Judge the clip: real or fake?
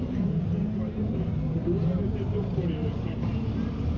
fake